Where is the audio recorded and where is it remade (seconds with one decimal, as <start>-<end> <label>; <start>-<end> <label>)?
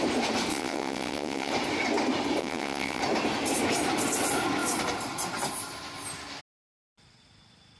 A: 0.0-0.5 recorded; 0.5-1.5 remade; 1.5-2.4 recorded; 2.4-3.0 remade; 3.0-7.8 recorded